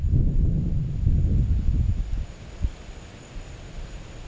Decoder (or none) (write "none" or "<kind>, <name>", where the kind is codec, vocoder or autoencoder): none